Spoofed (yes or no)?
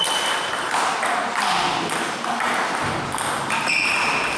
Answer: no